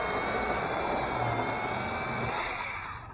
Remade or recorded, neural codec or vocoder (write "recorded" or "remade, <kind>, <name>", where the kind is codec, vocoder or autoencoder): recorded